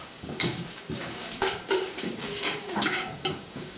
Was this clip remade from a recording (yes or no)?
yes